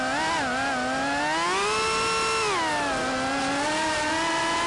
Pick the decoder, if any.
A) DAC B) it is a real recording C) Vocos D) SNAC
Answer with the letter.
B